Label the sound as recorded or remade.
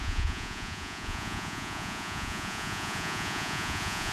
remade